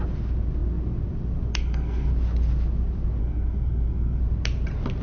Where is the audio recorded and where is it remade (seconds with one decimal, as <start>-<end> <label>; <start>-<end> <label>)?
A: 0.0-1.5 recorded; 1.5-2.1 remade; 2.1-3.2 recorded; 3.2-4.2 remade; 4.2-5.0 recorded